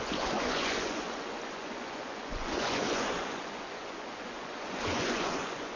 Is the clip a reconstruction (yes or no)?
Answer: yes